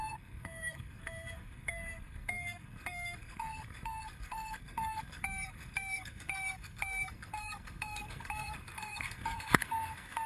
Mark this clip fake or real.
fake